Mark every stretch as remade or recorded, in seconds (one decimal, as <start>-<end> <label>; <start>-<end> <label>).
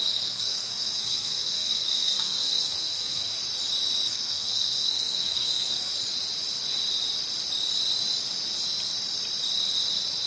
0.0-3.4 remade; 3.4-4.1 recorded; 4.1-5.9 remade; 5.9-10.3 recorded